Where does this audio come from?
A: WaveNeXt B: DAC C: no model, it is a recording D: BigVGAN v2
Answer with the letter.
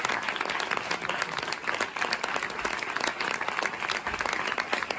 C